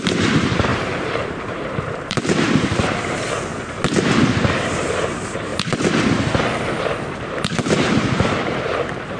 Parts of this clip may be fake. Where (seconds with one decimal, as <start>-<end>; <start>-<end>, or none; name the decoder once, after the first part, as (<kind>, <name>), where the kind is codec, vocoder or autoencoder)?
0.0-3.5 (vocoder, BigVGAN v2); 4.3-5.5; 6.8-9.2